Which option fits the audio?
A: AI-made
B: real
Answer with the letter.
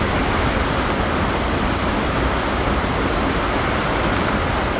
B